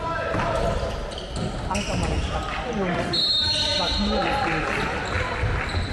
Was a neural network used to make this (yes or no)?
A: no